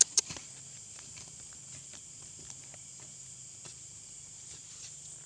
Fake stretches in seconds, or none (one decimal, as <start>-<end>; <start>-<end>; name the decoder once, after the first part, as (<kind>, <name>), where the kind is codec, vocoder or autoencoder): 4.6-5.3 (vocoder, BigVGAN v2)